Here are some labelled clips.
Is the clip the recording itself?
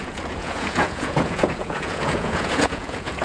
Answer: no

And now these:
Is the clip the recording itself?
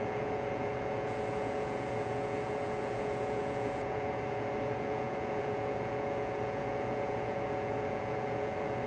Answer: no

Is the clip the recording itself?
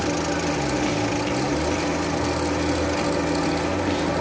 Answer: yes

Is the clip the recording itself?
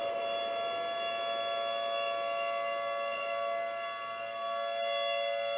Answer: yes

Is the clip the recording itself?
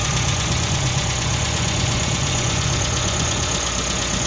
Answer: no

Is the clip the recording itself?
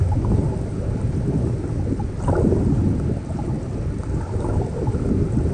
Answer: yes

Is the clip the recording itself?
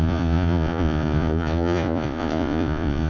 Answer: no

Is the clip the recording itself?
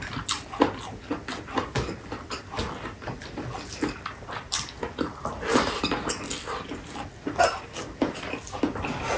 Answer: yes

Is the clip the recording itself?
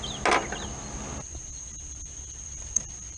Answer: yes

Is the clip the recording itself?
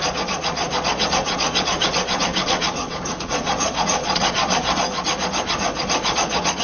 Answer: no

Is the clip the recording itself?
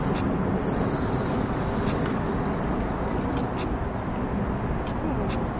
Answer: yes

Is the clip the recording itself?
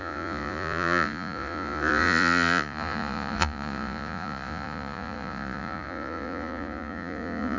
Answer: no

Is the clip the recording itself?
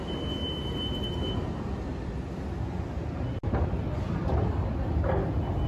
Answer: yes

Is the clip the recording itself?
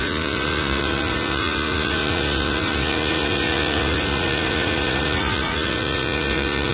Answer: no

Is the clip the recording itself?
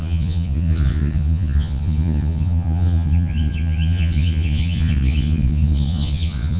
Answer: no